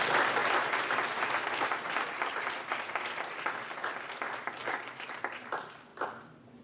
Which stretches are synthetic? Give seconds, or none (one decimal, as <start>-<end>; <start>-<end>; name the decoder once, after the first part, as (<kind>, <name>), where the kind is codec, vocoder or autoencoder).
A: 4.6-5.2 (codec, DAC)